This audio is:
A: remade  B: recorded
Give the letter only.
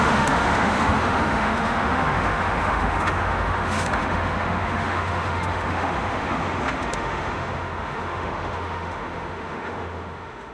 A